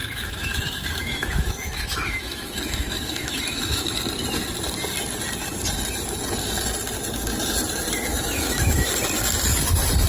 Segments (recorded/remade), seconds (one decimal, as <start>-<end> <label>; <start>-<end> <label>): 0.0-4.0 remade; 4.0-8.1 recorded; 8.1-8.9 remade; 8.9-10.1 recorded